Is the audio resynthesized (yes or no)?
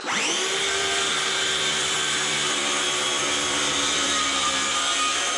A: yes